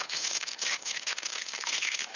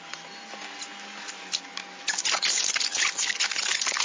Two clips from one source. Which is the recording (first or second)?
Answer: second